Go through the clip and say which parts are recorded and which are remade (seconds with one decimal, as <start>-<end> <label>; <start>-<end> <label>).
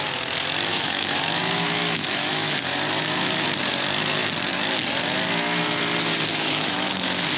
0.0-0.7 recorded; 0.7-2.6 remade; 2.6-6.3 recorded; 6.3-7.4 remade